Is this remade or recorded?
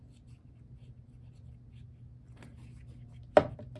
recorded